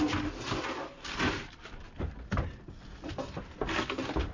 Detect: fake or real real